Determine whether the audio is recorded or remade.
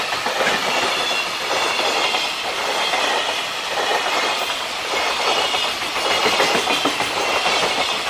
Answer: recorded